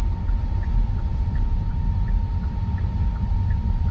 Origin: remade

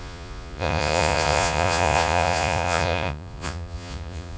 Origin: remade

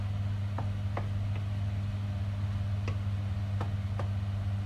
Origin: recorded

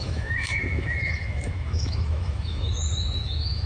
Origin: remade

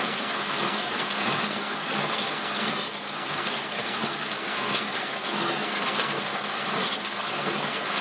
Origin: remade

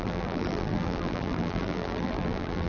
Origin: remade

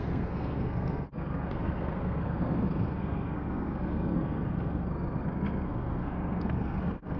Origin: remade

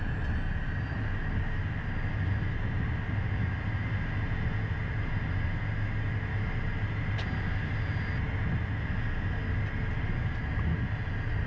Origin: recorded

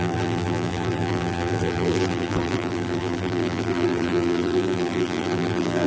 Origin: remade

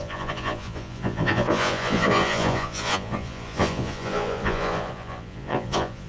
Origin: remade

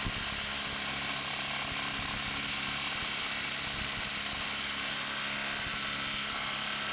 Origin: recorded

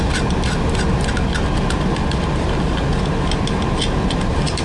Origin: recorded